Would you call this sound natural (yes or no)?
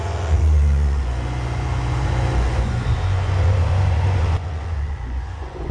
no